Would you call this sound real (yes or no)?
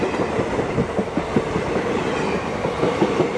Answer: yes